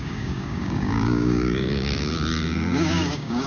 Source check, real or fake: fake